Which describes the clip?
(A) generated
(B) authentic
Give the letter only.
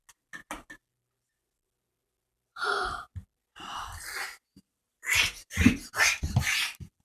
B